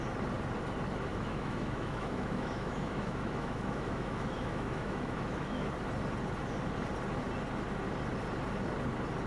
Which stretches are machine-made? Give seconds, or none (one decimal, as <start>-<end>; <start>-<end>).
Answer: 1.1-5.7